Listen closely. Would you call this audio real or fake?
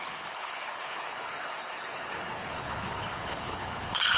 fake